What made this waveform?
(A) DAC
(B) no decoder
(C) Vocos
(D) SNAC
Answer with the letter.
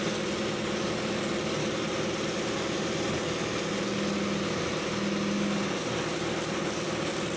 B